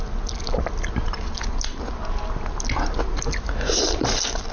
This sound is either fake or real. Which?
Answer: real